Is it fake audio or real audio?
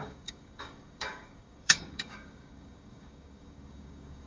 fake